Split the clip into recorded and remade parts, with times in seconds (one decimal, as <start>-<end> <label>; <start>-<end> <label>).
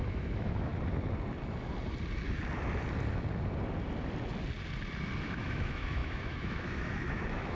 0.0-0.7 remade; 0.7-5.2 recorded; 5.2-7.5 remade